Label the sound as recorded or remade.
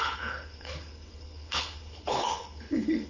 remade